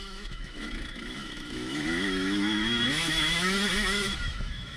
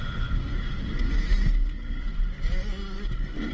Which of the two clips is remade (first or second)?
first